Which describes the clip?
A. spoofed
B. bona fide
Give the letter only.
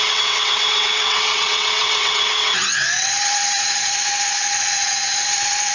A